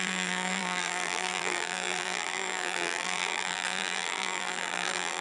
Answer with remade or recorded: remade